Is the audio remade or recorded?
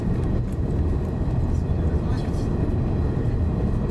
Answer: recorded